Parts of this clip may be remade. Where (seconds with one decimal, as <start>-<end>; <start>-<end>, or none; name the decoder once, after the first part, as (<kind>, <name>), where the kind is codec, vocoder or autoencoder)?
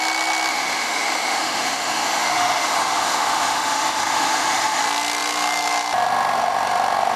0.5-4.8 (autoencoder, DAC-VAE)